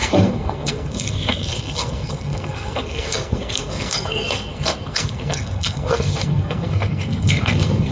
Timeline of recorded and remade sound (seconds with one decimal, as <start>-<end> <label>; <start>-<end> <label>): 0.0-7.9 remade